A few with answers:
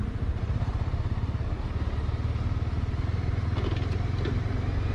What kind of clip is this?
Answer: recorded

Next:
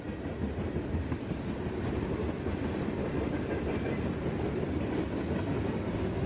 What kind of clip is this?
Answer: recorded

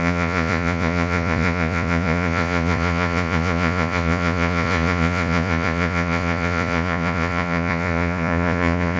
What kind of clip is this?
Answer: remade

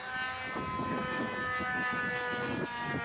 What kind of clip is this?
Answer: recorded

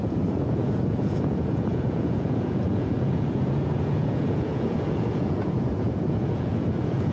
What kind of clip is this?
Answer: remade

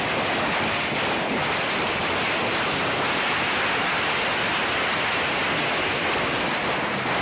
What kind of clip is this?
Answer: recorded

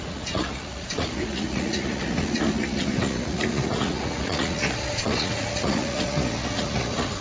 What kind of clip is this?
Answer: remade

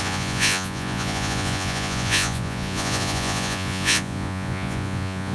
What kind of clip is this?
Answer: remade